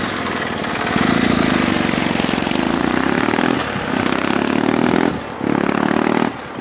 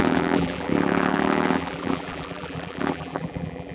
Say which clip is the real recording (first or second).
first